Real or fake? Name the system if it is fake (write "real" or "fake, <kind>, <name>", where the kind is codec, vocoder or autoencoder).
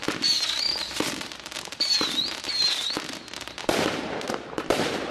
real